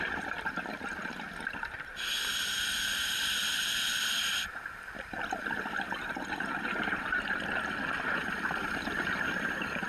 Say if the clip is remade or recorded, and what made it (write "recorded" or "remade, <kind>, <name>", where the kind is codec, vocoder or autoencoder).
recorded